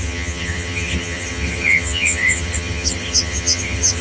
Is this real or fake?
fake